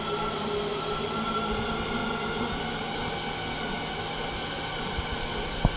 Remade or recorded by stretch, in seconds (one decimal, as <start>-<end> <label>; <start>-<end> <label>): 0.0-0.7 recorded; 0.7-1.3 remade; 1.3-5.8 recorded